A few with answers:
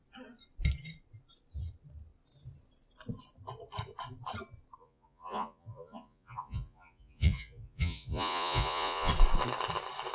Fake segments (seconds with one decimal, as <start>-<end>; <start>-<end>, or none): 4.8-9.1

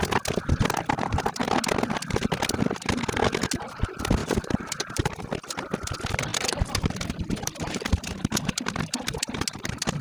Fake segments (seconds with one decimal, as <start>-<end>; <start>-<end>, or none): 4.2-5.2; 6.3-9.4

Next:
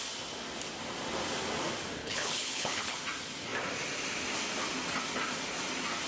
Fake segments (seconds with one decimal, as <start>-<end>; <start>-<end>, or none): 2.0-3.0